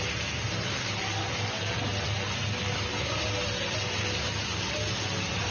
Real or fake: real